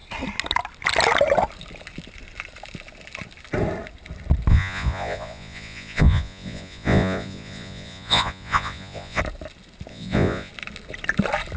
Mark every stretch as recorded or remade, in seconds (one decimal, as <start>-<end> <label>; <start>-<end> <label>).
0.0-4.5 recorded; 4.5-9.2 remade; 9.2-9.9 recorded; 9.9-10.5 remade; 10.5-11.6 recorded